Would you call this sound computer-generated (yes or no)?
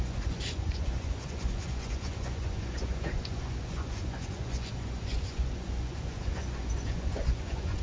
yes